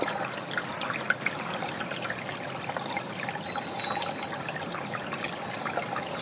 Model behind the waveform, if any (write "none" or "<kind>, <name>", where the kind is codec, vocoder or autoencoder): none